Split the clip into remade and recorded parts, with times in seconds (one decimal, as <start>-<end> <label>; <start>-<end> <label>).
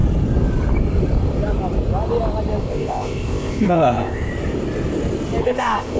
0.0-2.6 recorded; 2.6-4.3 remade; 4.3-5.4 recorded; 5.4-6.0 remade